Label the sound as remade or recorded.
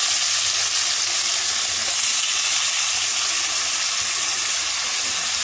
recorded